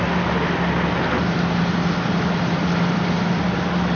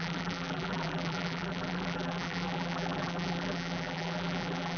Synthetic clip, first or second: second